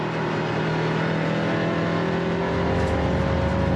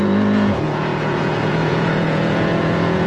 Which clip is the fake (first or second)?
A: second